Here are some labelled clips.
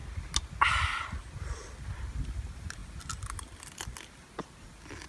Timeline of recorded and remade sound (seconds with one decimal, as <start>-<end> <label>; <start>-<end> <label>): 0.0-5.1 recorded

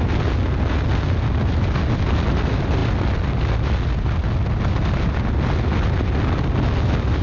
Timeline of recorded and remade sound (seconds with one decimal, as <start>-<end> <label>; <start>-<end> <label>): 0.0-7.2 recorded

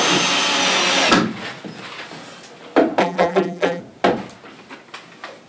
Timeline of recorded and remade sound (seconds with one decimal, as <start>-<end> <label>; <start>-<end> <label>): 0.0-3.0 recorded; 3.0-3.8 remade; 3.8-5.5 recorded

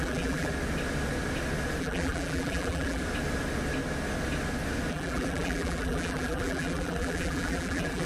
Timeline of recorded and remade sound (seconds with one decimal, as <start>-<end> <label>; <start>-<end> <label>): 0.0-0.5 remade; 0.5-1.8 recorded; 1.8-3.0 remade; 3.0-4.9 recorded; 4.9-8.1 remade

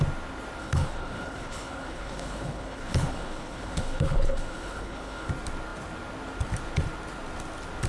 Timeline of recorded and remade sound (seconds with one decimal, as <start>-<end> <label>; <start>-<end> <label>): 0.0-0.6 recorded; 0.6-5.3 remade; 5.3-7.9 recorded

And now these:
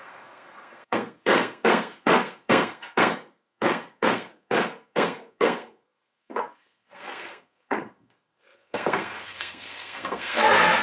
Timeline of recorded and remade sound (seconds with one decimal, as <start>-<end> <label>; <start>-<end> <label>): 0.0-10.8 remade